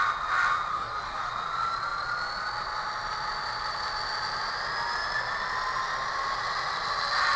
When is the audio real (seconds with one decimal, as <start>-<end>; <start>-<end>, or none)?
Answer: 0.0-0.7; 1.3-7.4